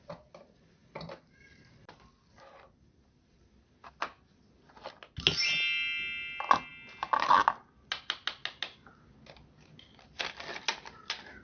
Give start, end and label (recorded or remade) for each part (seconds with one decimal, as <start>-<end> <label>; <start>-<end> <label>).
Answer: 0.0-11.4 recorded